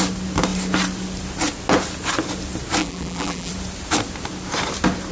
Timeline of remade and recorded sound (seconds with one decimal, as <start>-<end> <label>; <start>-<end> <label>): 0.0-2.8 recorded; 2.8-3.5 remade; 3.5-5.1 recorded